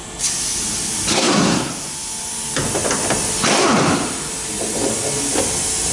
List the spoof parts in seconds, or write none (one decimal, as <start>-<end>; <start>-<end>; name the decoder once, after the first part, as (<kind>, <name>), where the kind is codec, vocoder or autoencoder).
1.1-1.7 (codec, SNAC)